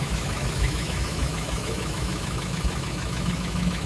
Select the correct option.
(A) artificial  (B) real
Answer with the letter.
A